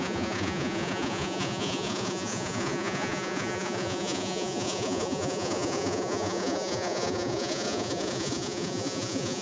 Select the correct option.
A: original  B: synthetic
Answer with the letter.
B